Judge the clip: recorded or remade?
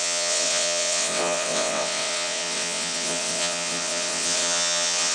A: remade